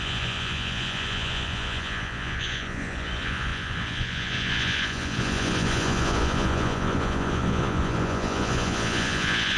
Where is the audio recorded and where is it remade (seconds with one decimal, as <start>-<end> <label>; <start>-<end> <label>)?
0.0-9.6 remade